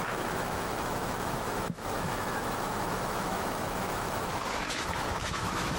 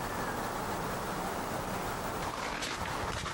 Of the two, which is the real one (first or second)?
second